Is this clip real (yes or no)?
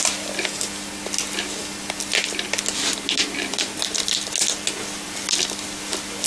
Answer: yes